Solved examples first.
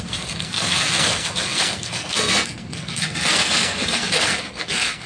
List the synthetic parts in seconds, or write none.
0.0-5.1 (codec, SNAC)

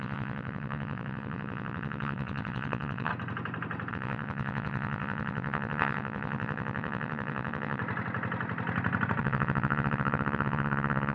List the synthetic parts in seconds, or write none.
0.0-3.1 (vocoder, WaveNeXt); 3.9-7.8; 9.2-11.1

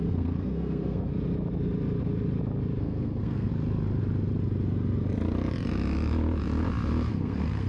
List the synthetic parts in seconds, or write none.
0.0-1.1 (codec, SNAC); 2.8-3.5; 7.1-7.7

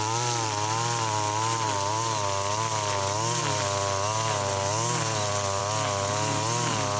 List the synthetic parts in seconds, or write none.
none

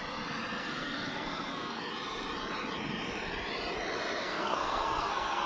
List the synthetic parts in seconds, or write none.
0.6-1.9 (codec, SNAC); 4.2-5.5

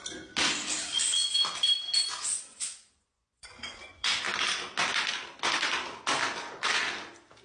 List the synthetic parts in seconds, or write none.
2.5-4.1 (vocoder, Vocos)

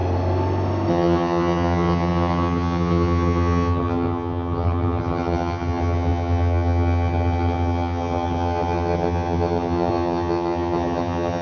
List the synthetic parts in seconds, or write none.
0.9-11.4 (vocoder, HiFi-GAN)

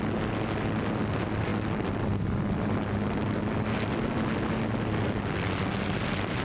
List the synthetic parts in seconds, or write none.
none